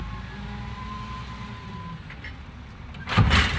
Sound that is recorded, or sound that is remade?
recorded